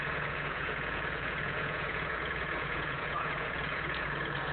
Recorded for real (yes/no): no